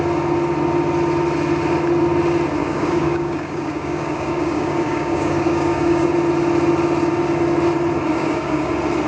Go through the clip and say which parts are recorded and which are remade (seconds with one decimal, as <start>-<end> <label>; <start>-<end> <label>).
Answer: 0.0-2.6 recorded; 2.6-6.1 remade; 6.1-8.1 recorded; 8.1-8.7 remade; 8.7-9.1 recorded